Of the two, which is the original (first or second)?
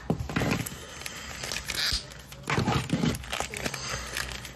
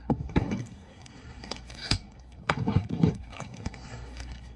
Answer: first